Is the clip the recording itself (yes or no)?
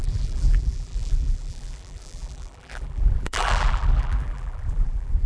no